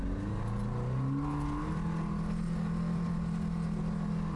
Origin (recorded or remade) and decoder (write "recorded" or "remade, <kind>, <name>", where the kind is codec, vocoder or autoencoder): recorded